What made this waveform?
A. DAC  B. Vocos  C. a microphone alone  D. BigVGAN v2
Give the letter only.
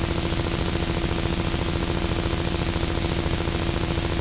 C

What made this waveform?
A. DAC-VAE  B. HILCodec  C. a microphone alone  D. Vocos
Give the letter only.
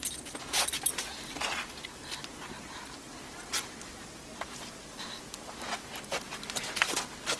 C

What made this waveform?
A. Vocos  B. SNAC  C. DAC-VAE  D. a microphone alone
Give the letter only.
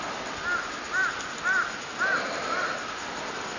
D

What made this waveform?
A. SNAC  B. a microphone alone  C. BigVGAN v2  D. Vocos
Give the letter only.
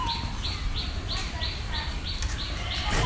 B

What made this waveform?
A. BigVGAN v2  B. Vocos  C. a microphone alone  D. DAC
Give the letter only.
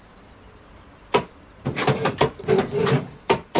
C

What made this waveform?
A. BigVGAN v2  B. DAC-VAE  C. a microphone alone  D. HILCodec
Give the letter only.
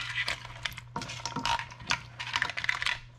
C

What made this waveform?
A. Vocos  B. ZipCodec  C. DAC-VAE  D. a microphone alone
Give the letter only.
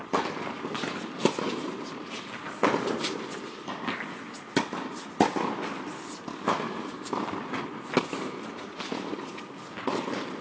D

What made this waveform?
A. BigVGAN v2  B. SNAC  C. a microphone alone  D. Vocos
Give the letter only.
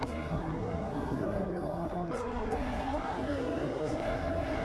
B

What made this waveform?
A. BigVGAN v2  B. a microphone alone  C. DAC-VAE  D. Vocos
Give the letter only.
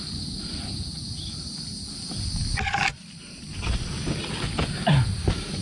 B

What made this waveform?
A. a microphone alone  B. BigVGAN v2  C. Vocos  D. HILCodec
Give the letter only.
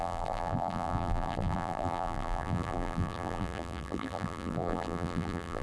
B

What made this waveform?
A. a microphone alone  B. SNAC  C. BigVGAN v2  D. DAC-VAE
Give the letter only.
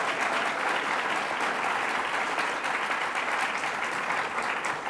A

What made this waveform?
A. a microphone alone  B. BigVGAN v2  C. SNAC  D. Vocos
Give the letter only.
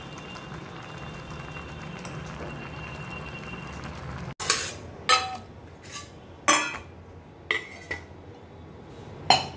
A